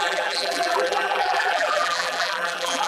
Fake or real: fake